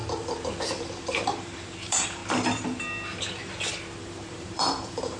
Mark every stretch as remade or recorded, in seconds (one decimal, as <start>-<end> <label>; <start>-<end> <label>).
0.0-0.7 recorded; 0.7-2.2 remade; 2.2-4.0 recorded; 4.0-5.2 remade